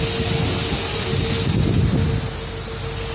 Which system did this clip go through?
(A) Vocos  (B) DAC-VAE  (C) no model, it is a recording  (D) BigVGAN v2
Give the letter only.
C